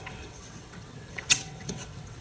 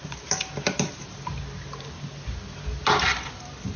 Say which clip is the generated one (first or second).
first